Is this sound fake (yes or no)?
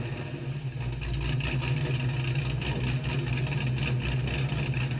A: no